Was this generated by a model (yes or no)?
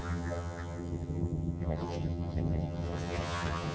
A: yes